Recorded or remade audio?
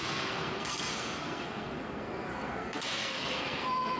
remade